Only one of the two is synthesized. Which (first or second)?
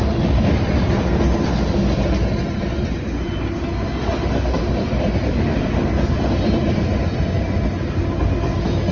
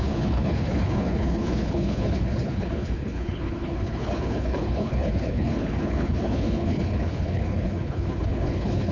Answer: second